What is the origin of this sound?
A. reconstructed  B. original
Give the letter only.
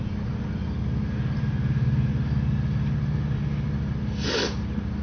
B